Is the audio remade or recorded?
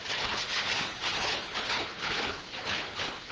remade